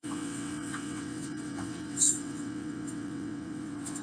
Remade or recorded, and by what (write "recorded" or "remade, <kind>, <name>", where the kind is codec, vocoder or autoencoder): remade, vocoder, WaveNeXt